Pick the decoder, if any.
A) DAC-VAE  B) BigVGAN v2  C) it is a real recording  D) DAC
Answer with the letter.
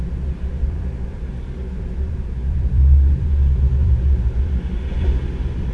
B